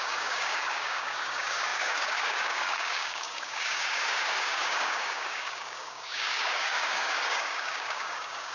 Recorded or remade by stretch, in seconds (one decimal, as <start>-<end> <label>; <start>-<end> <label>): 0.0-8.5 remade